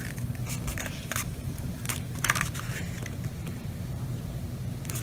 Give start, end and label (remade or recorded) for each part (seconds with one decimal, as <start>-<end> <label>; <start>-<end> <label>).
0.0-0.7 recorded; 0.7-1.7 remade; 1.7-3.4 recorded; 3.4-4.0 remade; 4.0-5.0 recorded